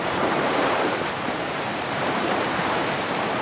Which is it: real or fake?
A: fake